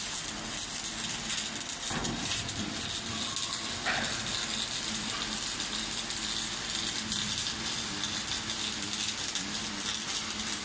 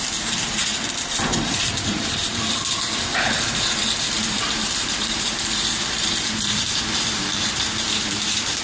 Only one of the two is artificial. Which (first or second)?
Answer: second